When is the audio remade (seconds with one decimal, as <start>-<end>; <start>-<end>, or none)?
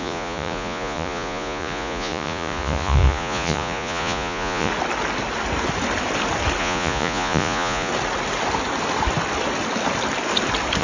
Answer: 0.0-4.7; 6.6-7.9